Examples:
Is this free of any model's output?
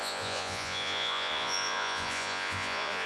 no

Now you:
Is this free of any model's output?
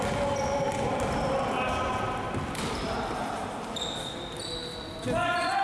yes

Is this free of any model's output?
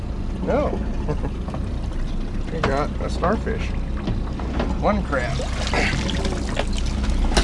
yes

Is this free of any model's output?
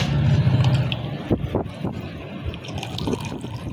yes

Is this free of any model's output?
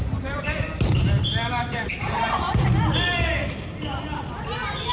yes